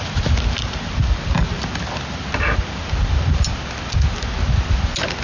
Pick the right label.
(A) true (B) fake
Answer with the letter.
A